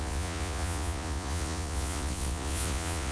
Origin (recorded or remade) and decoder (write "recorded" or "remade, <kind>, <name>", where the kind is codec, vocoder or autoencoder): remade, vocoder, Vocos